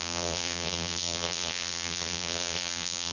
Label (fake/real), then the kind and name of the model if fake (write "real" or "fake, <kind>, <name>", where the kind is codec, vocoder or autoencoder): fake, vocoder, BigVGAN v2